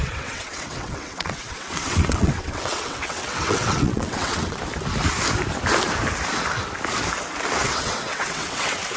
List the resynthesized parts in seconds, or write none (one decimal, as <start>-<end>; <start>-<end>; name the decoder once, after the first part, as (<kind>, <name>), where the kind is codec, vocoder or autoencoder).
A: 0.0-4.6 (vocoder, WaveNeXt); 7.6-9.0